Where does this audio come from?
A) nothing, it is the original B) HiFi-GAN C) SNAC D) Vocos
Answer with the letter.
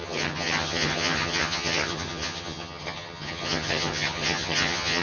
B